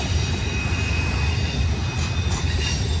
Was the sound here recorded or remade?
recorded